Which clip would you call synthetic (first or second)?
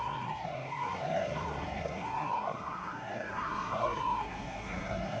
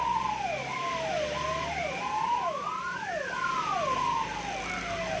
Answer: first